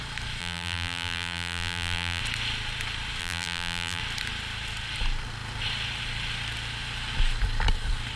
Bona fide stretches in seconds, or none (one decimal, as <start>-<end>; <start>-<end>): 0.0-0.4; 2.2-3.2; 4.0-8.2